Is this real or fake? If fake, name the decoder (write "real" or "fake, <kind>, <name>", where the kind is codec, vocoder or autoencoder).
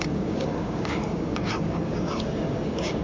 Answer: fake, codec, DAC